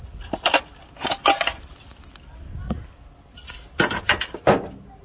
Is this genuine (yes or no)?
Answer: yes